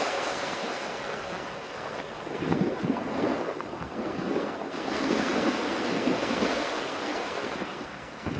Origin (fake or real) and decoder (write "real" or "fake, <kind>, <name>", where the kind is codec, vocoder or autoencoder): fake, codec, SNAC